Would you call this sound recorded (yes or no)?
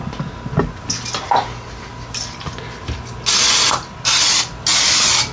yes